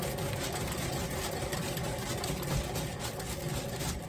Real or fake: real